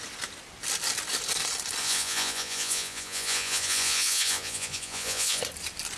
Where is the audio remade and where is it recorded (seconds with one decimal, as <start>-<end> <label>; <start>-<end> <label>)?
0.0-1.8 recorded; 1.8-5.4 remade; 5.4-6.0 recorded